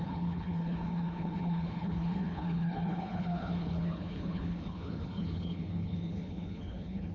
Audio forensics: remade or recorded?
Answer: remade